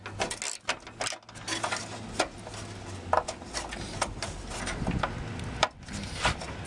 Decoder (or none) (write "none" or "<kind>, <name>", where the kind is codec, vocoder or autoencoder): none